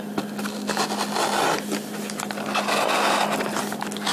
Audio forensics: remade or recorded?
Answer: recorded